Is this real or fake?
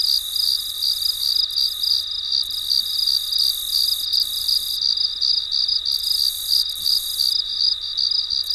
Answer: real